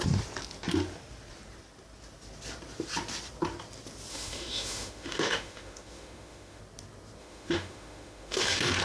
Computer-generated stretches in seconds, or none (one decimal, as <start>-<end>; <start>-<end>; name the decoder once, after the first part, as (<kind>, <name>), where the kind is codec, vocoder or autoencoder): 4.1-6.6 (autoencoder, DAC-VAE); 7.2-8.8